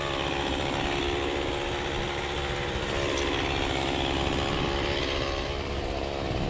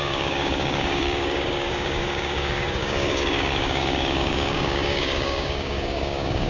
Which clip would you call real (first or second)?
first